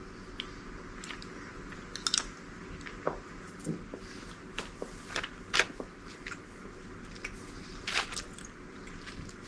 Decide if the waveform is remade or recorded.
recorded